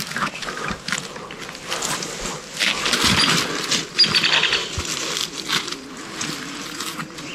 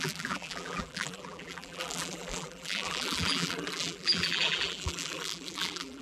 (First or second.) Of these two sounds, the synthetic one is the second